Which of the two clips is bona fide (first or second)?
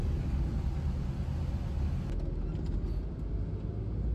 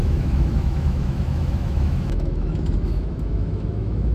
first